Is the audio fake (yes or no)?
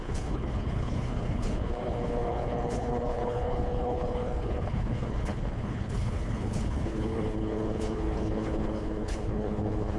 yes